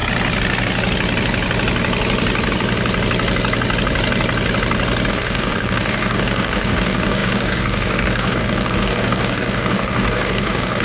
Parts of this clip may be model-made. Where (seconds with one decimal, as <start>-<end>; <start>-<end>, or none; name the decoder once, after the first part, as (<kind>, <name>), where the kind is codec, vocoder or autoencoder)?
5.1-10.8 (codec, DAC)